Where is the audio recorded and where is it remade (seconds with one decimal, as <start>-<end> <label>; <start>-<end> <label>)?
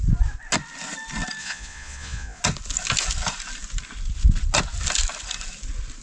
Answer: 0.0-1.4 recorded; 1.4-2.4 remade; 2.4-6.0 recorded